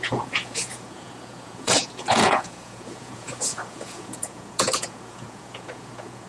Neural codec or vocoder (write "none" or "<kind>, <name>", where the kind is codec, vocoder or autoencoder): vocoder, Vocos